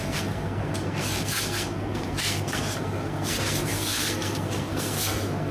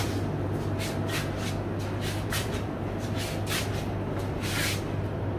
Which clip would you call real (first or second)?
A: second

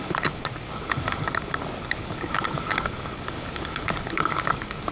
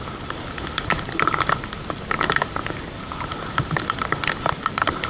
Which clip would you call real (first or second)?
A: second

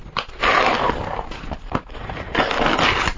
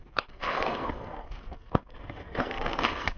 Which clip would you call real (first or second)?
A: first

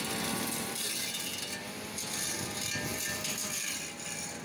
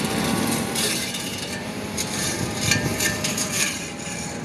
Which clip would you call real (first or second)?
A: first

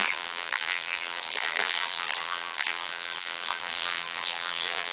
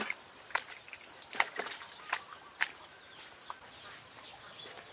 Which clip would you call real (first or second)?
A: second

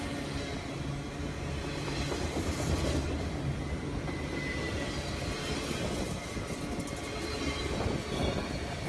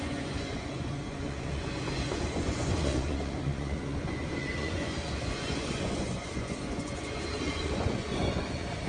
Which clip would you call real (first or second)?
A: first